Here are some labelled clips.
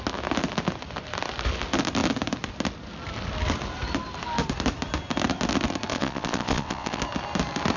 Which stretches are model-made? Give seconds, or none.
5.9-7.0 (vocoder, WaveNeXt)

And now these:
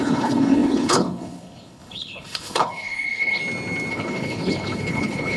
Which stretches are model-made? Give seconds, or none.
0.0-3.4 (codec, HILCodec); 3.9-5.4

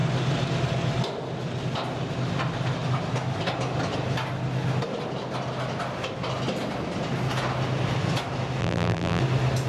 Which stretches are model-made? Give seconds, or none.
8.6-9.2 (vocoder, BigVGAN v2)

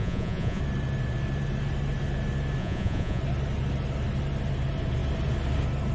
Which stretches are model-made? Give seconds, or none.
0.0-0.6 (vocoder, Vocos); 2.6-3.2

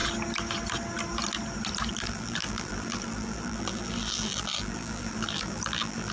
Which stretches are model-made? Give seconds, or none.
1.9-6.1 (vocoder, BigVGAN v2)